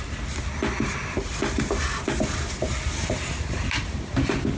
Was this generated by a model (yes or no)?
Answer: no